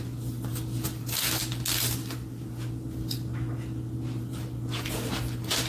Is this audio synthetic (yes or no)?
no